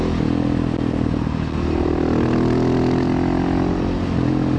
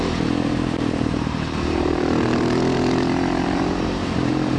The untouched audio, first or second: first